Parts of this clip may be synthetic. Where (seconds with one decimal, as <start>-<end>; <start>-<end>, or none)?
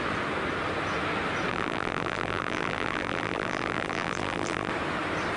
1.5-4.7